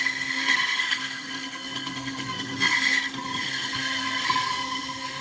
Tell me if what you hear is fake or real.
fake